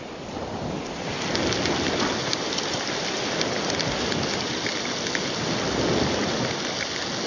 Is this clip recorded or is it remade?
recorded